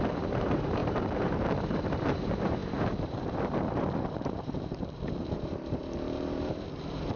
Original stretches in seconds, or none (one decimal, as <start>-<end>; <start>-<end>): none